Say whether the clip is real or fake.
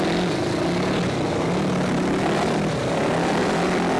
real